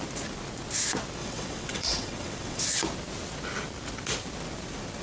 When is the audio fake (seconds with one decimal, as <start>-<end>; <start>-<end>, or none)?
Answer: 1.2-2.6